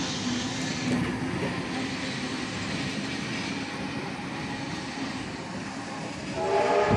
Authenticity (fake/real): real